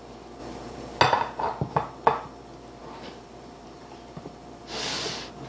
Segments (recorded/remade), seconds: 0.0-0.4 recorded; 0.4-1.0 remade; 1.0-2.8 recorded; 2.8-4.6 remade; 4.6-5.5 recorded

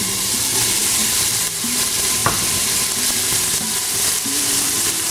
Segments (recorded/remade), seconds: 0.0-2.2 remade; 2.2-4.1 recorded; 4.1-5.1 remade

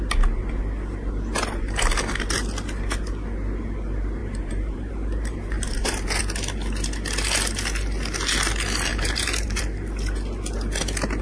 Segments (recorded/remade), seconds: 0.0-4.2 recorded; 4.2-6.2 remade; 6.2-8.9 recorded; 8.9-9.6 remade; 9.6-11.2 recorded

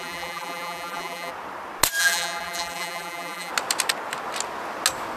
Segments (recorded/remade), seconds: 0.0-1.3 remade; 1.3-2.0 recorded; 2.0-3.5 remade; 3.5-5.2 recorded

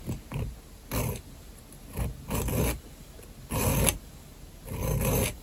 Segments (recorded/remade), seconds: 0.0-5.4 recorded

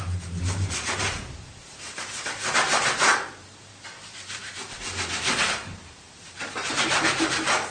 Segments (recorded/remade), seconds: 0.0-7.7 remade